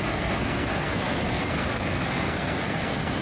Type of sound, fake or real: fake